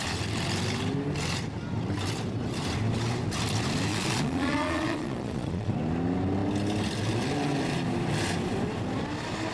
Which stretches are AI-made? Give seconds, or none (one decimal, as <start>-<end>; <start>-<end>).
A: 3.9-5.7